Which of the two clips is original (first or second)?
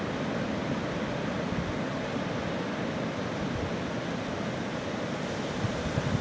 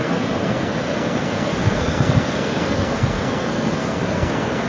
first